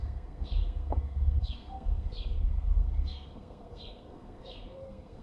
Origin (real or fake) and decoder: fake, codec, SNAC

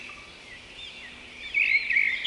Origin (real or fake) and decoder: real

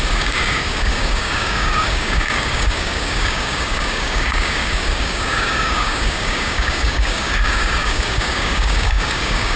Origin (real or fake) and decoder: fake, codec, DAC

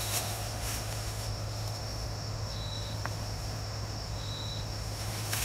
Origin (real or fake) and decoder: fake, autoencoder, DAC-VAE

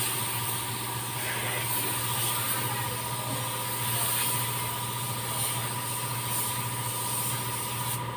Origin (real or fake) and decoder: real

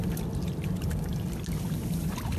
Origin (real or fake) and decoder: real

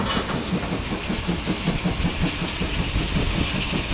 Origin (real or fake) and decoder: real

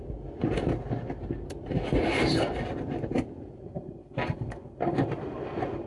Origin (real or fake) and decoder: real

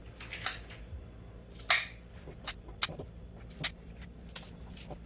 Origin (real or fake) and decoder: real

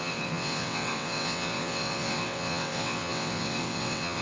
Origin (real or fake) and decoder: fake, vocoder, WaveNeXt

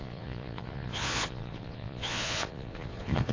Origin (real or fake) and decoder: fake, vocoder, Vocos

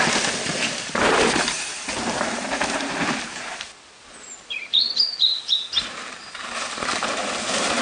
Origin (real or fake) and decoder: fake, vocoder, BigVGAN v2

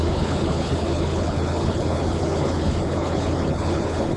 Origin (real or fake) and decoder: fake, codec, HILCodec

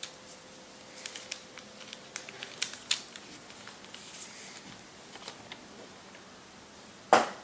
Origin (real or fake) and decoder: real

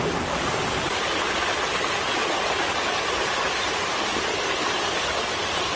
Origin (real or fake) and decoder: real